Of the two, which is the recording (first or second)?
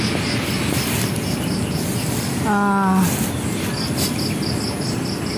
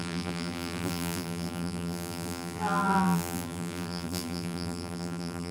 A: first